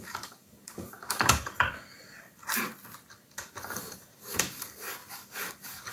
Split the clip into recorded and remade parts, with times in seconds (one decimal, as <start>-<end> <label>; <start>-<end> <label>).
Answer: 0.0-2.4 remade; 2.4-3.1 recorded; 3.1-5.9 remade